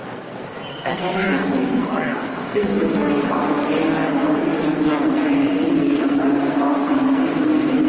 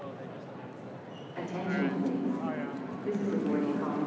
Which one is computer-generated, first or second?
first